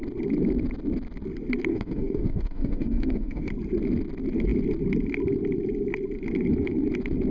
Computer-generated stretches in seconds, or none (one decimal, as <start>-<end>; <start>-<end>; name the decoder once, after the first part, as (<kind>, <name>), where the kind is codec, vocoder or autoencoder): 1.7-3.5 (autoencoder, DAC-VAE)